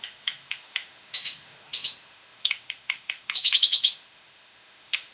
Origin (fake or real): fake